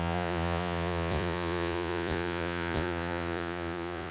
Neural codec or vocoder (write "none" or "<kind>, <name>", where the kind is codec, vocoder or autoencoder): vocoder, Vocos